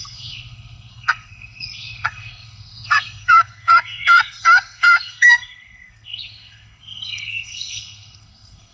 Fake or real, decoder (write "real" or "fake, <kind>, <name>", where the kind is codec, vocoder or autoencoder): fake, codec, SNAC